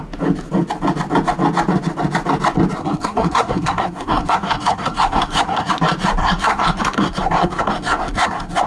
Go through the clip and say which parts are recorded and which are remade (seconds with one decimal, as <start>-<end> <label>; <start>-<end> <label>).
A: 0.0-2.8 recorded; 2.8-5.7 remade; 5.7-6.2 recorded; 6.2-8.7 remade